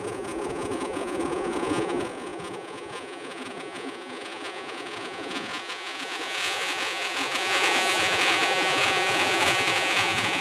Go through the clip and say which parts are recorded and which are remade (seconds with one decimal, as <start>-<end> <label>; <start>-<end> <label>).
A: 0.0-10.4 remade